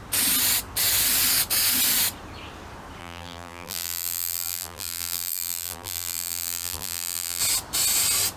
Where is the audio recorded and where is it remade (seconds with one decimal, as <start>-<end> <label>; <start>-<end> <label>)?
0.0-3.0 recorded; 3.0-7.4 remade; 7.4-8.4 recorded